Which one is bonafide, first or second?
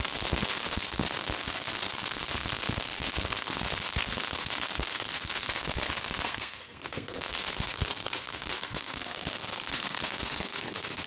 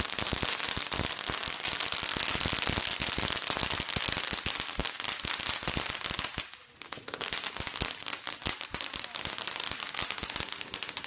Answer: second